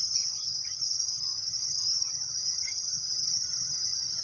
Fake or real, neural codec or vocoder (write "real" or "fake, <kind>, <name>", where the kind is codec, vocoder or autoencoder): fake, vocoder, HiFi-GAN